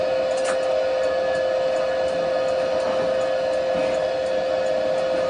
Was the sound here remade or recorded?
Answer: recorded